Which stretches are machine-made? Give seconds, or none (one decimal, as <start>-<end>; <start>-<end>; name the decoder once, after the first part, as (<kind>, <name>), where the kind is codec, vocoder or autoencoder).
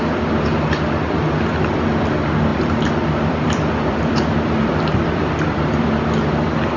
2.5-5.9 (vocoder, BigVGAN v2)